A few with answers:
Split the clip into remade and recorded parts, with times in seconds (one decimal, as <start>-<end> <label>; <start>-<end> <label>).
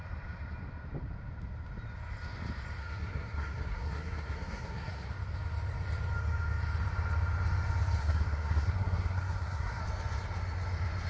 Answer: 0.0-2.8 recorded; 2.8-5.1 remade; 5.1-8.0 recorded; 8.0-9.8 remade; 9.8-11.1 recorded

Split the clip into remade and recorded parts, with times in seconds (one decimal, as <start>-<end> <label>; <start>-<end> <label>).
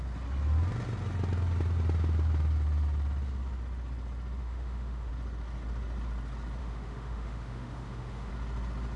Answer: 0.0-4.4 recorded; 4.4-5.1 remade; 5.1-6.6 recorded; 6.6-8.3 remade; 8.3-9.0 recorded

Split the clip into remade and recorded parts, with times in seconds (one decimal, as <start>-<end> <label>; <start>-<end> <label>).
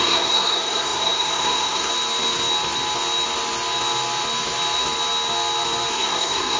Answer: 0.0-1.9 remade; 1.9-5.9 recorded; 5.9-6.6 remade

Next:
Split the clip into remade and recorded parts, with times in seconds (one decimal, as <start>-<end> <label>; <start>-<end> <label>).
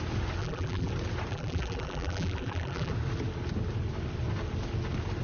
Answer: 0.0-0.4 recorded; 0.4-0.9 remade; 0.9-1.3 recorded; 1.3-2.9 remade; 2.9-5.2 recorded